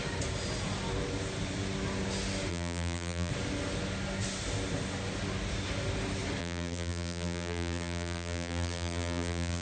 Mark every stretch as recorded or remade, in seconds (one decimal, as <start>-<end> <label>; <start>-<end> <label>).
0.0-2.5 recorded; 2.5-3.3 remade; 3.3-6.4 recorded; 6.4-9.6 remade

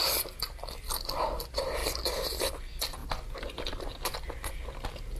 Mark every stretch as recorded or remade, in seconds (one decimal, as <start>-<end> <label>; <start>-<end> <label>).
0.0-5.2 recorded

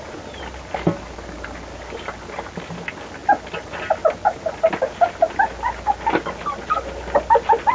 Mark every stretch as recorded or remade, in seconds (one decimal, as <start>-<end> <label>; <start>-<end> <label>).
0.0-3.2 recorded; 3.2-4.0 remade; 4.0-7.7 recorded

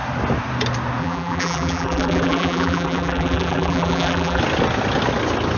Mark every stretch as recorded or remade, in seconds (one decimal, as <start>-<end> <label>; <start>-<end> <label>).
0.0-1.0 recorded; 1.0-4.4 remade; 4.4-5.6 recorded

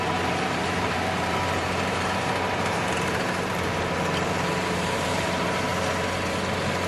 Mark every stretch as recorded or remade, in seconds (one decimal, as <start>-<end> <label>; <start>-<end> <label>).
0.0-5.7 remade; 5.7-6.9 recorded